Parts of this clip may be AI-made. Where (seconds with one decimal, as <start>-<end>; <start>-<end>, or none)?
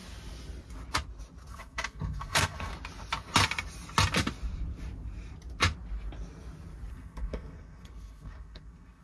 1.5-2.7; 6.9-9.0